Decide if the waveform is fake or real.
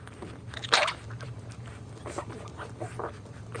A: fake